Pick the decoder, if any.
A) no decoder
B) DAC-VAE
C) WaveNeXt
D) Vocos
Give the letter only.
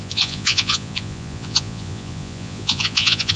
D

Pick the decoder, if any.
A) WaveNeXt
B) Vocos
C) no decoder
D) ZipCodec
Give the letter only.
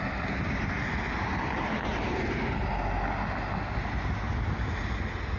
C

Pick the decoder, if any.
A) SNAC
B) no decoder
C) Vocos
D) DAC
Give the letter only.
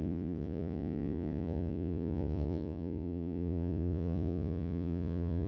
C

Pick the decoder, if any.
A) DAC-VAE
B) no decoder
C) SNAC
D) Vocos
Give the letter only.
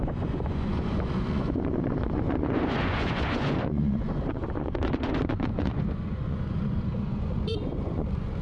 D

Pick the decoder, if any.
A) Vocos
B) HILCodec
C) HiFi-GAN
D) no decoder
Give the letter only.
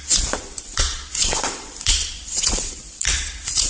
A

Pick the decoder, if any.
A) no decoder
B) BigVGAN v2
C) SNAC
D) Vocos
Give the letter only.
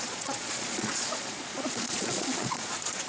D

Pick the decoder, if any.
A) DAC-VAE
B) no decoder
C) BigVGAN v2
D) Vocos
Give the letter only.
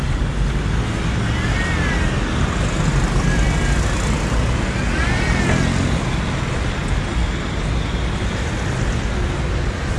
B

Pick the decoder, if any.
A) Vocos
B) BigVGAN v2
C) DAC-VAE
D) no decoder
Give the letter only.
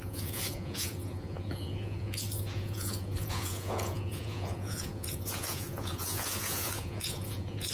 A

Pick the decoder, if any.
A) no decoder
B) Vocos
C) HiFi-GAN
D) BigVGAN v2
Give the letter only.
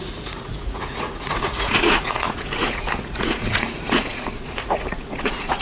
B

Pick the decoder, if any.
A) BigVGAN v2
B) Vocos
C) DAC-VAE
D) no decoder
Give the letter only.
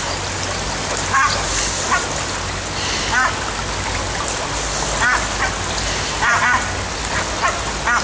D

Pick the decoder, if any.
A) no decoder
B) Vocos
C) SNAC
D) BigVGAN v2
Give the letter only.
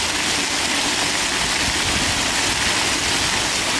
A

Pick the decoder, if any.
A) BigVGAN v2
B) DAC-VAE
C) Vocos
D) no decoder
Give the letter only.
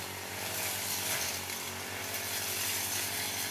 D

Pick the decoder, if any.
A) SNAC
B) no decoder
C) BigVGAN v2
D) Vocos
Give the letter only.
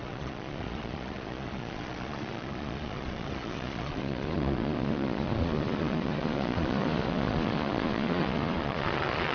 D